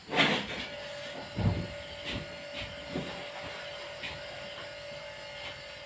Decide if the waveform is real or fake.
real